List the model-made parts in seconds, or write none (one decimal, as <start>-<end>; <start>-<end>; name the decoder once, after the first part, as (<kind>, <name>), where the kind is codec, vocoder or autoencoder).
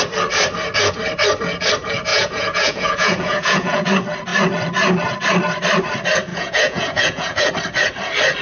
2.1-3.9 (vocoder, Vocos); 6.3-7.5